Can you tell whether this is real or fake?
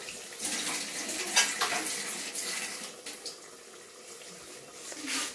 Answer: real